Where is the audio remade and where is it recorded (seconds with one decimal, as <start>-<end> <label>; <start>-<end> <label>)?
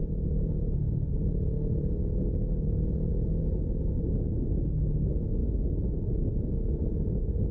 0.0-5.4 recorded; 5.4-6.0 remade; 6.0-7.5 recorded